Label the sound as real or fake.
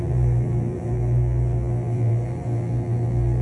fake